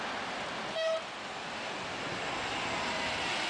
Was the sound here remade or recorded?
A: recorded